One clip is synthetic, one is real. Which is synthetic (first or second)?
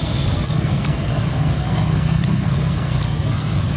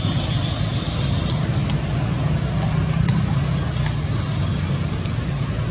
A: first